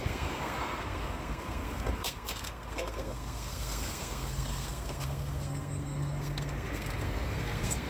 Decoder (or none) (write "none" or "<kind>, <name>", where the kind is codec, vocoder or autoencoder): codec, SNAC